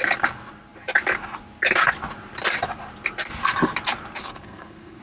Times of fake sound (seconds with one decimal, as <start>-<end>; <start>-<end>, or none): 4.2-5.0